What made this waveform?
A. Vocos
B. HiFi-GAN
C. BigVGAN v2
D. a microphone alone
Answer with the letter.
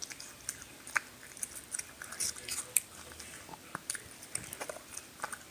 D